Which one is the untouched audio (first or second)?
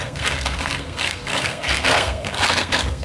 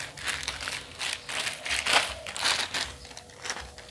second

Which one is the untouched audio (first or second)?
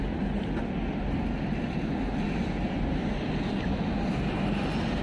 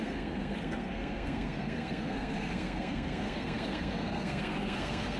first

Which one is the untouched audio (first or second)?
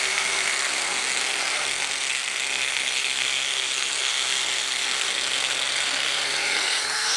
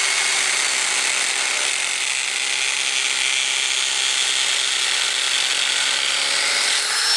second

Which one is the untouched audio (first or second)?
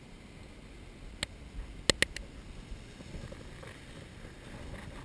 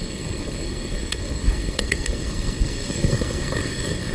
first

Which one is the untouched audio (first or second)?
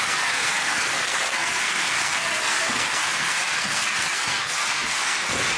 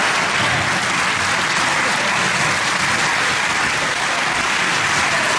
second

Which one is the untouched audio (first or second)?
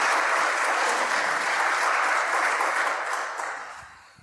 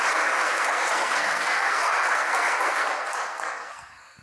first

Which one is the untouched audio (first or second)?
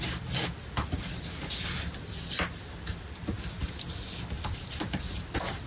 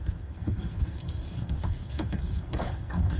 first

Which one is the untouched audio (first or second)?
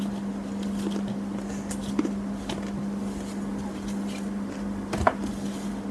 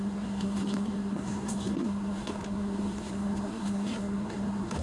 first